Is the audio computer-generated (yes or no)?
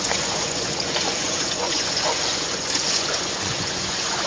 yes